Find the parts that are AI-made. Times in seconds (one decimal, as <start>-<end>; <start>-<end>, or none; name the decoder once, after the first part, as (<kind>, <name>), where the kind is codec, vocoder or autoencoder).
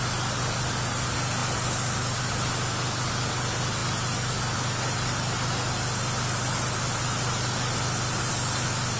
none